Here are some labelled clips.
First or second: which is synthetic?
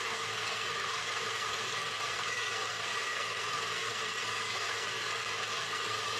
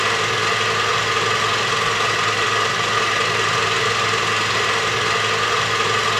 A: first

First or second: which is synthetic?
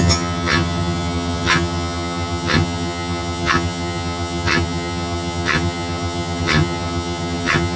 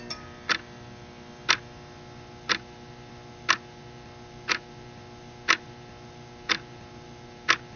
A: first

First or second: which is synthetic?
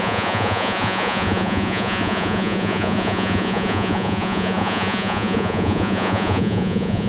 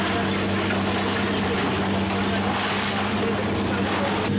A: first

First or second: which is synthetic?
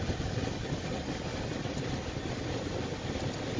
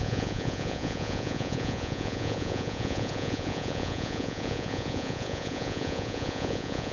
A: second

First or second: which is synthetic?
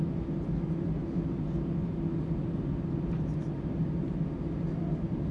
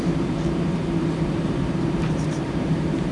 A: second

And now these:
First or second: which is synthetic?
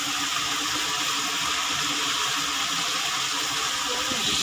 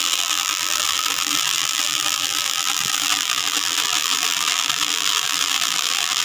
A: second